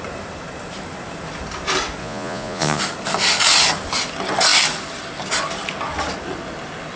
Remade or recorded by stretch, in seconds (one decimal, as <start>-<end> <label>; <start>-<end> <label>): 0.0-2.0 recorded; 2.0-2.8 remade; 2.8-7.0 recorded